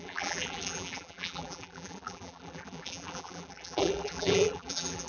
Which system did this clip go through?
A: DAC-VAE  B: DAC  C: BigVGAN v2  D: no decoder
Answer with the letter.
C